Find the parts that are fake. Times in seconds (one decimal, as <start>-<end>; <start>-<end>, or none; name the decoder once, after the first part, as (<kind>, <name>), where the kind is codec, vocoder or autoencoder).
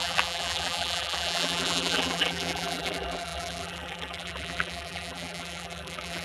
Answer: 0.0-6.2 (vocoder, BigVGAN v2)